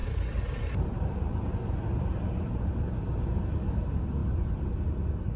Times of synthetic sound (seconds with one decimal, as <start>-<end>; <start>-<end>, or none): 0.0-3.2; 4.2-4.7